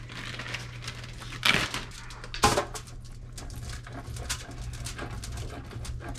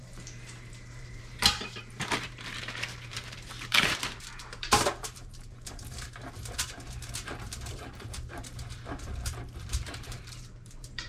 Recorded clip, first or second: first